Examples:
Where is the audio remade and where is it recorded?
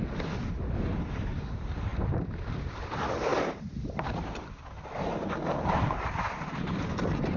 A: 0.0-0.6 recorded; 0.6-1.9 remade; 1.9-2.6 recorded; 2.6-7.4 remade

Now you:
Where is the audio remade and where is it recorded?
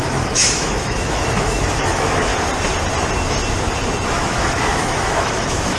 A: 0.0-2.3 remade; 2.3-4.1 recorded; 4.1-5.8 remade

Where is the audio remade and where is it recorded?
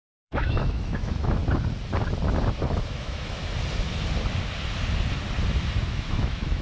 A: 0.0-1.4 remade; 1.4-2.9 recorded; 2.9-3.4 remade; 3.4-5.8 recorded; 5.8-6.6 remade